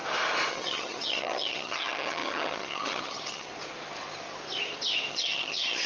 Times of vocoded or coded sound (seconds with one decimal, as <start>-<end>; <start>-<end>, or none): 0.5-3.5; 5.1-5.9